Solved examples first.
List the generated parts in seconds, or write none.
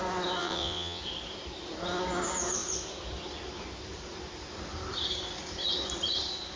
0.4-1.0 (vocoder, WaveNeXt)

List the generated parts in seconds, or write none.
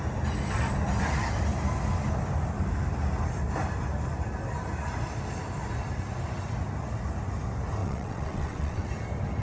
7.8-8.9 (vocoder, WaveNeXt)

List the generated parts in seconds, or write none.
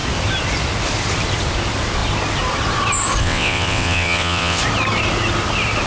3.2-4.6 (vocoder, WaveNeXt)